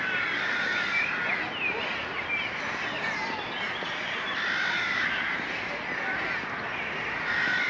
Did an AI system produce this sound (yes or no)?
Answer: no